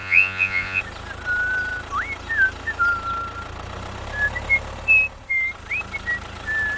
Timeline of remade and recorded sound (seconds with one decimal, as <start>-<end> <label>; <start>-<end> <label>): 0.0-0.8 remade; 0.8-6.8 recorded